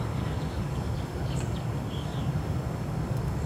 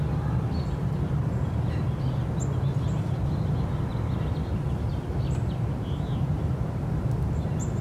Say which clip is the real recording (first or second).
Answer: second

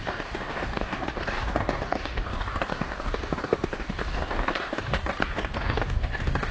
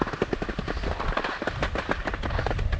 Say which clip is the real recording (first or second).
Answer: second